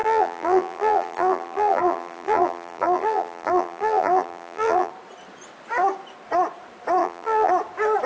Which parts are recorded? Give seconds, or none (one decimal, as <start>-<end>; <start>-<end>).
4.9-7.0; 7.5-8.1